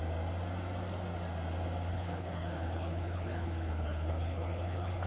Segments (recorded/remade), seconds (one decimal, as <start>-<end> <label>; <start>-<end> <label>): 0.0-1.9 recorded; 1.9-5.1 remade